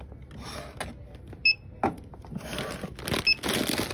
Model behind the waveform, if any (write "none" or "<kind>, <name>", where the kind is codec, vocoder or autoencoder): none